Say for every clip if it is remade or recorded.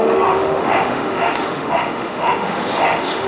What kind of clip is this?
remade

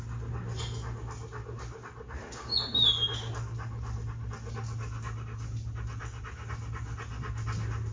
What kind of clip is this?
recorded